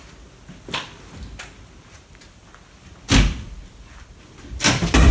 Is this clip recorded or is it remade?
recorded